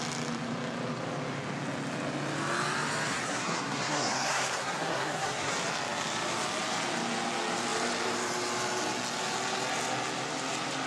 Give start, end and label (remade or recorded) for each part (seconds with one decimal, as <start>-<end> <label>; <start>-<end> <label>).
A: 0.0-3.1 recorded; 3.1-5.5 remade; 5.5-10.9 recorded